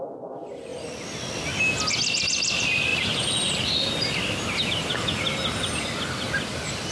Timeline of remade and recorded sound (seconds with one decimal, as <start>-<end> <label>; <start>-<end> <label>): 0.0-6.9 recorded